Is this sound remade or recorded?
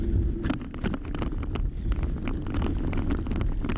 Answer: recorded